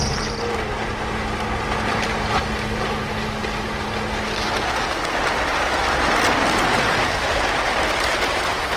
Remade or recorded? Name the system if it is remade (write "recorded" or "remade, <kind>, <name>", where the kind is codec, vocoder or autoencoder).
recorded